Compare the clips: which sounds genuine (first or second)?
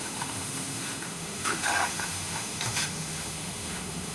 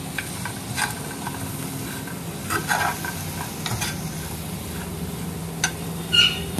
second